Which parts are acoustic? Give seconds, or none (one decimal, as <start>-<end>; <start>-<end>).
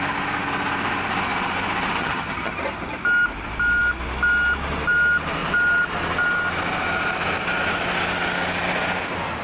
0.0-2.0; 2.6-9.4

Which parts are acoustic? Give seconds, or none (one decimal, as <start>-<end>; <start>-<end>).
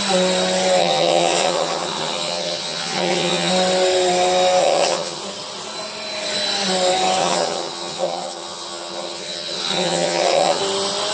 0.0-0.8; 3.5-4.6; 5.2-7.2; 10.6-11.1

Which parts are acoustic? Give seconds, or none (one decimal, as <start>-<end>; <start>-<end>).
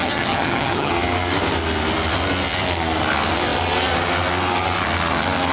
0.9-5.5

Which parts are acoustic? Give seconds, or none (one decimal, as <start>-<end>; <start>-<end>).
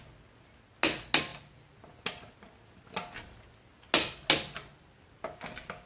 0.0-5.9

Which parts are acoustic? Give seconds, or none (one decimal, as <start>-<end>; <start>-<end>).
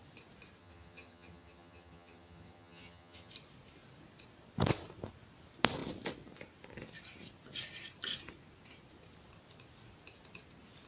0.0-0.6; 3.3-10.9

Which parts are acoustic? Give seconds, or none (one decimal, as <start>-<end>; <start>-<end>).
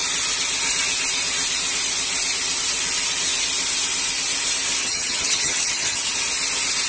0.0-4.8; 6.1-6.9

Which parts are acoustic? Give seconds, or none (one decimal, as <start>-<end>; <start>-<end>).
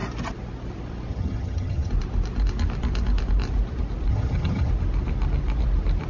0.0-1.1; 1.9-4.1; 4.7-6.1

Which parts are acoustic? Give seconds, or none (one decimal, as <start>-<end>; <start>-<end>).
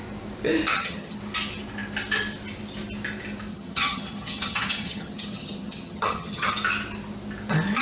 0.0-0.7; 1.2-3.5; 6.5-7.8